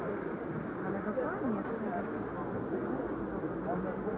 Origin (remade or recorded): recorded